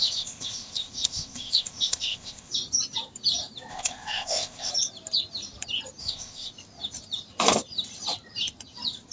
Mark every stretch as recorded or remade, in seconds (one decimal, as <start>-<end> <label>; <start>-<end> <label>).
0.0-2.5 remade; 2.5-3.7 recorded; 3.7-4.7 remade; 4.7-6.0 recorded; 6.0-6.5 remade; 6.5-9.1 recorded